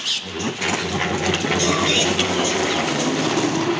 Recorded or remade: recorded